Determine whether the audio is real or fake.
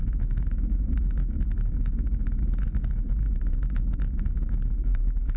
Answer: fake